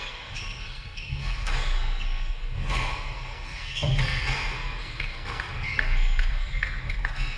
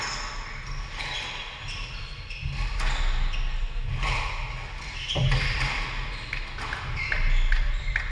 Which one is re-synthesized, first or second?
first